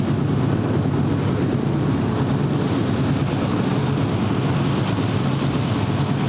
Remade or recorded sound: recorded